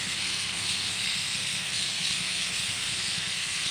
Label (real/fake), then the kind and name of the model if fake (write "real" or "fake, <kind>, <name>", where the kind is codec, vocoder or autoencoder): fake, codec, SNAC